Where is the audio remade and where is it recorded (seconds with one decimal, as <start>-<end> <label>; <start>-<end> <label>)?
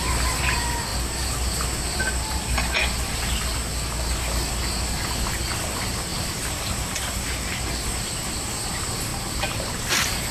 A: 0.0-6.1 recorded; 6.1-8.1 remade; 8.1-10.3 recorded